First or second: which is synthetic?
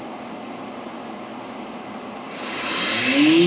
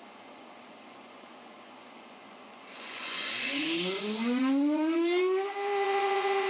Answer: second